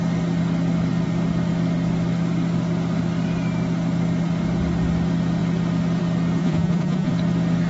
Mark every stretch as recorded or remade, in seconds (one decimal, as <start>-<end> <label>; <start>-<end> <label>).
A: 0.0-6.4 recorded; 6.4-7.1 remade; 7.1-7.7 recorded